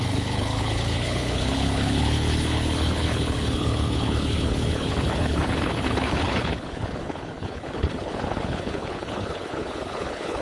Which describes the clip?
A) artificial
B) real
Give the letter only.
A